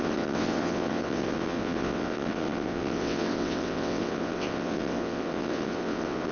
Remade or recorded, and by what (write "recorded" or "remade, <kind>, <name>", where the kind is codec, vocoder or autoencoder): remade, vocoder, WaveNeXt